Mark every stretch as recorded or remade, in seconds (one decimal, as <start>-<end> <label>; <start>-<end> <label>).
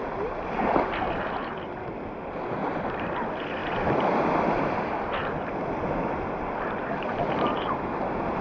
0.0-8.4 recorded